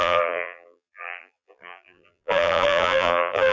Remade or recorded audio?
remade